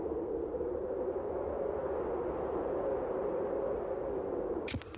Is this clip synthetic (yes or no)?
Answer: no